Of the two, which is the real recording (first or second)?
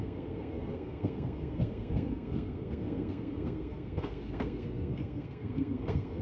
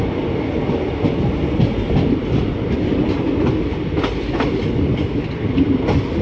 second